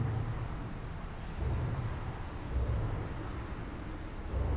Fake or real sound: real